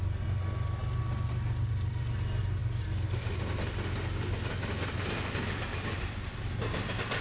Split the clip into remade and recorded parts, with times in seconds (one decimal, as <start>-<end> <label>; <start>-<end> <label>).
0.0-7.2 recorded